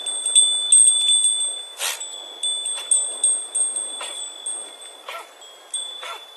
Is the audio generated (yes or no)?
no